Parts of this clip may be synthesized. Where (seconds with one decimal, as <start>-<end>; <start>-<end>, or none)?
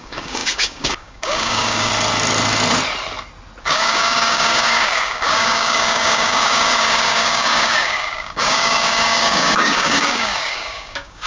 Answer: 0.0-1.9; 3.6-11.3